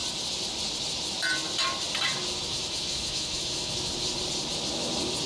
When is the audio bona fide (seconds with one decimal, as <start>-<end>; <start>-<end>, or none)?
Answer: 0.0-2.5; 3.9-5.3